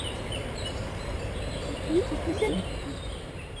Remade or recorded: remade